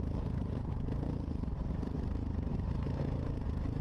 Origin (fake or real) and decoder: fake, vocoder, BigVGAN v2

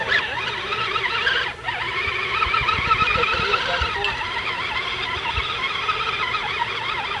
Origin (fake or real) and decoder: real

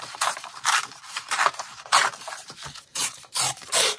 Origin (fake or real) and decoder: fake, vocoder, BigVGAN v2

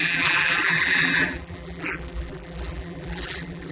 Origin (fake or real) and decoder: fake, vocoder, BigVGAN v2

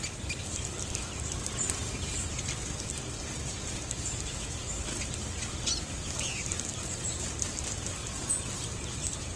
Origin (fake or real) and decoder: real